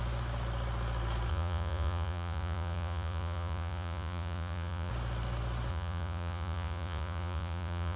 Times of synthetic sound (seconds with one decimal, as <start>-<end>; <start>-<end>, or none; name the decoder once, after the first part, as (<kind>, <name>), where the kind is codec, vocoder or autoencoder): 1.3-4.9 (vocoder, Vocos); 5.7-8.0